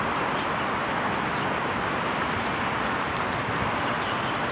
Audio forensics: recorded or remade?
recorded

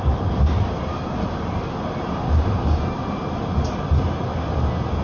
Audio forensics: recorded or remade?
recorded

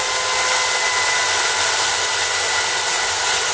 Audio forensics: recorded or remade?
recorded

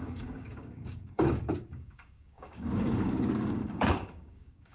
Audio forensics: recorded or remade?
remade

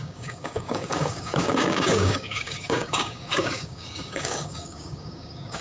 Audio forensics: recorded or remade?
remade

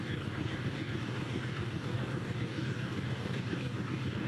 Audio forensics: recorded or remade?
remade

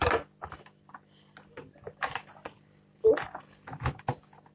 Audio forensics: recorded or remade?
recorded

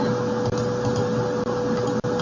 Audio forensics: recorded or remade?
recorded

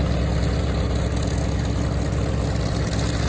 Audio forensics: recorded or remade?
recorded